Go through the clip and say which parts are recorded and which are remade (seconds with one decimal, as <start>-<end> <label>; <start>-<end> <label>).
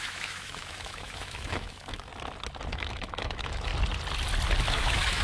0.0-2.1 remade; 2.1-2.7 recorded; 2.7-3.7 remade; 3.7-4.6 recorded; 4.6-5.2 remade